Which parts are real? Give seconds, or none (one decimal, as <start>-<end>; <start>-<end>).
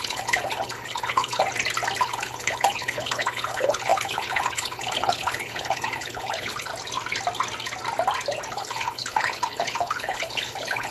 1.4-2.0; 6.7-8.5